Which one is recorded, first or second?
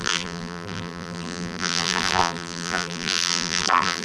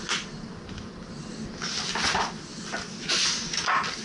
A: second